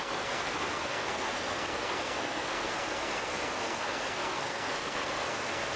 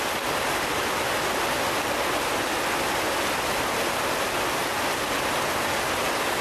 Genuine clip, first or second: second